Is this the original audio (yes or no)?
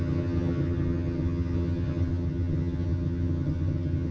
no